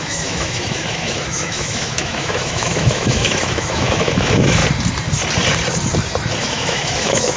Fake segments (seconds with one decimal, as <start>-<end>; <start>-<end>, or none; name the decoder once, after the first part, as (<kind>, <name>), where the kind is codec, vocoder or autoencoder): 0.0-4.6 (autoencoder, DAC-VAE); 6.4-7.4